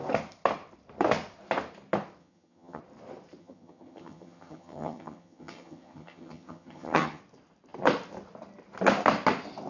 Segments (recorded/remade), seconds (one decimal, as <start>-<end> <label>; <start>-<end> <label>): 0.0-2.2 recorded; 2.2-2.8 remade; 2.8-3.4 recorded; 3.4-7.2 remade; 7.2-9.7 recorded